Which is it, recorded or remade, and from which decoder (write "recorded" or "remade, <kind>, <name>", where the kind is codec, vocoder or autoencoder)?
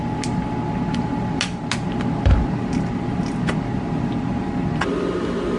recorded